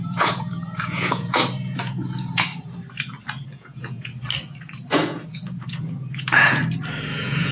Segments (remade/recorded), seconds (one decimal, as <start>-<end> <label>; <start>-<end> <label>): 0.0-2.5 remade; 2.5-3.4 recorded; 3.4-4.1 remade; 4.1-4.9 recorded; 4.9-6.6 remade; 6.6-7.1 recorded; 7.1-7.5 remade